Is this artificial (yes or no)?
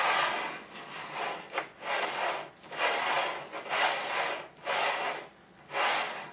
no